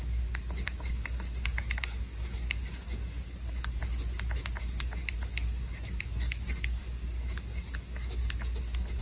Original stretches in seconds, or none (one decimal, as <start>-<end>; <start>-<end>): 3.8-4.6